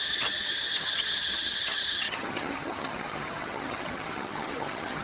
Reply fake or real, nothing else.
fake